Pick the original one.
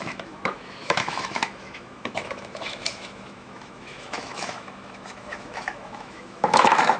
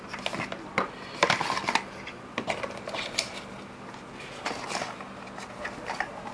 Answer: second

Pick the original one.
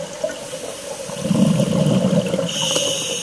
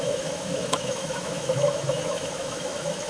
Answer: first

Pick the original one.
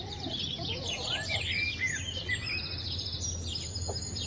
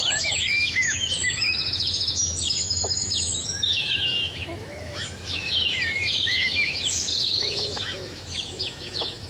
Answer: first